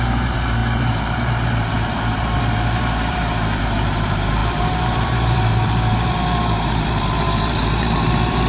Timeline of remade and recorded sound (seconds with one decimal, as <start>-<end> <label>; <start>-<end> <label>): 0.0-8.5 remade